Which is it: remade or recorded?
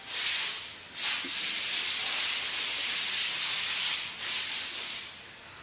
recorded